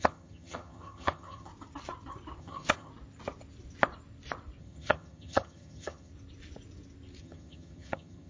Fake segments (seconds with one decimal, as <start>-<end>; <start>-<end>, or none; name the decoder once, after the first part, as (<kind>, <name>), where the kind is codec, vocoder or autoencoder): 0.0-1.5 (vocoder, HiFi-GAN); 2.4-2.9; 4.6-6.1; 7.2-8.3